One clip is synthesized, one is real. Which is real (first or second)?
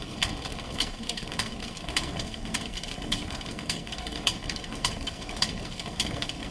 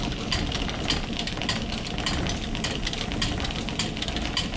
second